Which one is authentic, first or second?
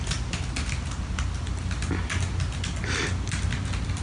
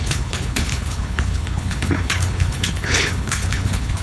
first